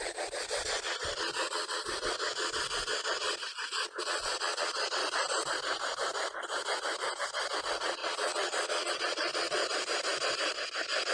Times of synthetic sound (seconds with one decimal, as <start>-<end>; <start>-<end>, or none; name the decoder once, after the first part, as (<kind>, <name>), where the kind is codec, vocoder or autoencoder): 0.0-5.0 (vocoder, Vocos); 7.6-9.6